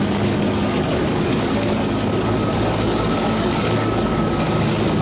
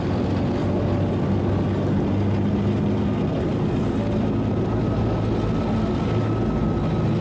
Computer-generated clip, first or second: first